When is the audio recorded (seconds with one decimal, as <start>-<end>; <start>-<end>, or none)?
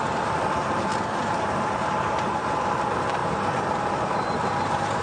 0.9-1.4; 3.2-3.7